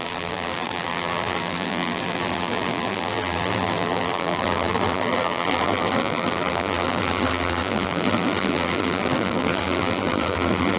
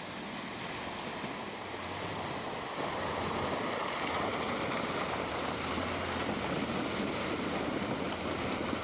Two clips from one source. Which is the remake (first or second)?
first